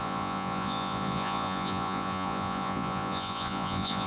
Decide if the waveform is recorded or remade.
remade